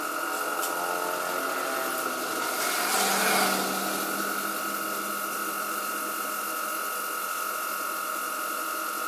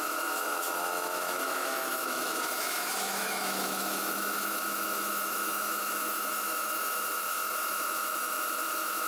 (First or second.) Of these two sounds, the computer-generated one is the second